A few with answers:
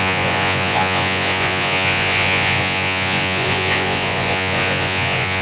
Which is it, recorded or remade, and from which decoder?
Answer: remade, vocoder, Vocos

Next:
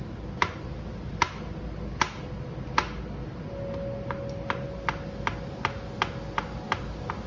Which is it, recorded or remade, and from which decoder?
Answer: recorded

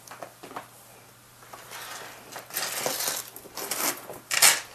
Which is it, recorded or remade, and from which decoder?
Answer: recorded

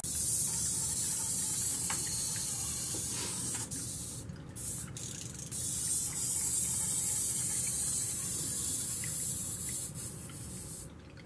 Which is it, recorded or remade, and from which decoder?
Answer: recorded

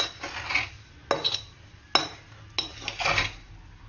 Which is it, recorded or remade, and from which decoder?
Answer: recorded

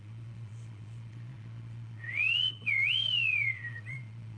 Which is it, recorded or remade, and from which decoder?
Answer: remade, vocoder, Vocos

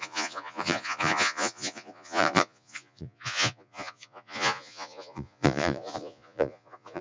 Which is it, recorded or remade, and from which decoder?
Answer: remade, vocoder, Vocos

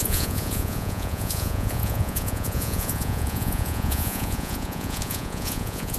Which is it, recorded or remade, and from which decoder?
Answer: remade, vocoder, Vocos